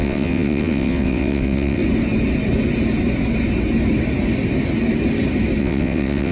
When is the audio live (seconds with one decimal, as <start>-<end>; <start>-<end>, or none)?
1.8-5.6